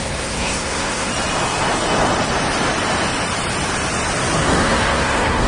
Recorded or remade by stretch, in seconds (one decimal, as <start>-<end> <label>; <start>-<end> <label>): 0.0-1.1 remade; 1.1-4.4 recorded; 4.4-5.5 remade